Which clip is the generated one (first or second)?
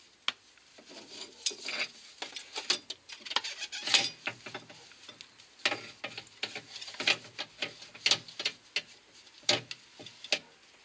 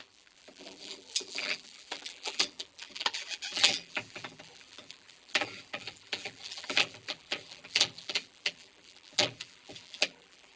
second